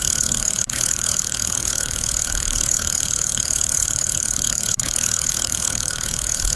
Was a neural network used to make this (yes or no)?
yes